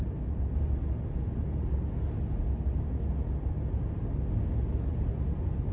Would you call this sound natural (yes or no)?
yes